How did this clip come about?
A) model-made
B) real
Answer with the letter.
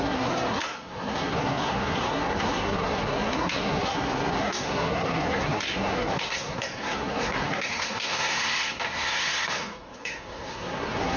A